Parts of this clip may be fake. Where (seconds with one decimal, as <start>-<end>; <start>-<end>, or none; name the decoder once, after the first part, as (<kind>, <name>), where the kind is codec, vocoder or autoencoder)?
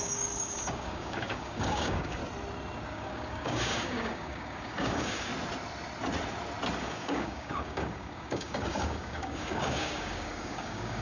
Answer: 0.0-2.2 (codec, DAC); 2.9-5.3; 6.8-11.0